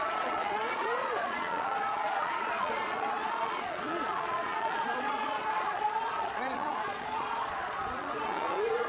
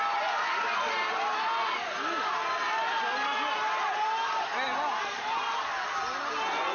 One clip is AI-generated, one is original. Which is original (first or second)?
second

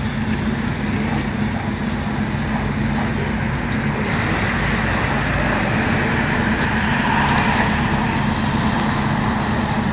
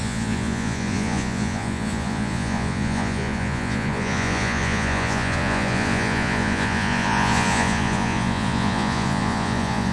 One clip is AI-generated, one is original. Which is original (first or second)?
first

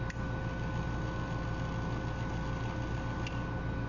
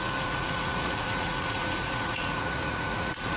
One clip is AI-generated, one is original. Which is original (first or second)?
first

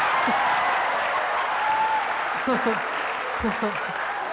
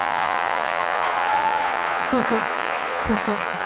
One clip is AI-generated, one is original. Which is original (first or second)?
first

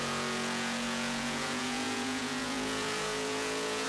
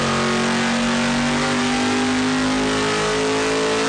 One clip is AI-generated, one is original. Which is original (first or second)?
second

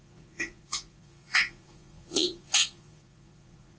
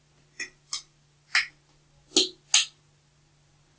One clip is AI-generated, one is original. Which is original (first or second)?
second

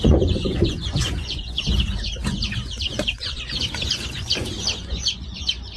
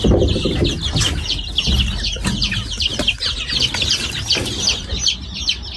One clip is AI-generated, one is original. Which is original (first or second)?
second